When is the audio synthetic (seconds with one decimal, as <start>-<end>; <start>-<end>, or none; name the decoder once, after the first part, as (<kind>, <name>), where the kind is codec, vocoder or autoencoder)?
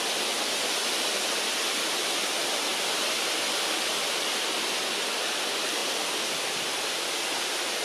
2.7-4.8 (vocoder, BigVGAN v2); 5.8-6.8